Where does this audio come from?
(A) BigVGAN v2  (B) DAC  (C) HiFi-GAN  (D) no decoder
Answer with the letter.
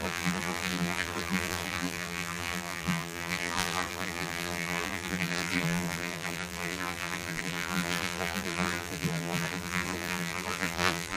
A